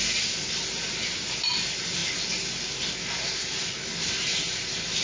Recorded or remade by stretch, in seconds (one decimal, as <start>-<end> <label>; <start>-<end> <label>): 0.0-5.0 recorded